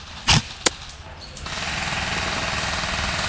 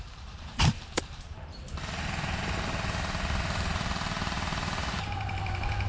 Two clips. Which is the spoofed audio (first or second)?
second